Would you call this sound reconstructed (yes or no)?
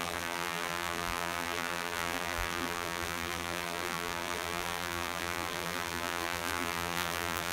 yes